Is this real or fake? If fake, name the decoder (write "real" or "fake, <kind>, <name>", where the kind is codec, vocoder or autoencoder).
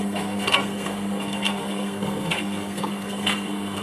fake, codec, SNAC